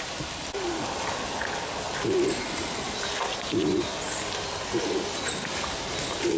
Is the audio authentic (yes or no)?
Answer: yes